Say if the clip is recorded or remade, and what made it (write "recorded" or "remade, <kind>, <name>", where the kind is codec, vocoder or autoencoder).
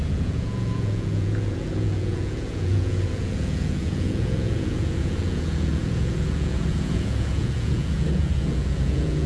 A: remade, vocoder, Vocos